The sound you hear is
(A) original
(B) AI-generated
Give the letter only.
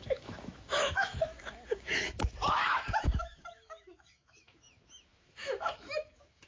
B